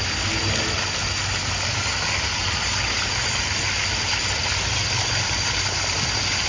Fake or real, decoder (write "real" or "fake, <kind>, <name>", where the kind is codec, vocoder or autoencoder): real